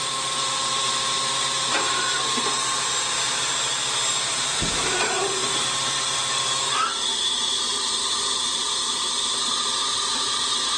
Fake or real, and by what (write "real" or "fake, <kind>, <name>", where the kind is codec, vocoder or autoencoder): fake, vocoder, BigVGAN v2